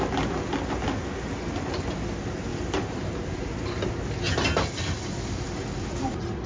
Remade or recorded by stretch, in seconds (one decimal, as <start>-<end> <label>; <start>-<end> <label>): 0.0-2.5 recorded; 2.5-3.9 remade; 3.9-6.5 recorded